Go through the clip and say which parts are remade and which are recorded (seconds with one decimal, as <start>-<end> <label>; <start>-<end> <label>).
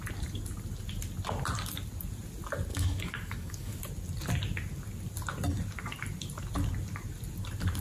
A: 0.0-2.7 recorded; 2.7-3.8 remade; 3.8-7.8 recorded